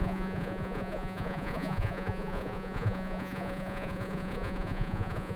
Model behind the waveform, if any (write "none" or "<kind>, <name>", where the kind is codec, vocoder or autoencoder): vocoder, Vocos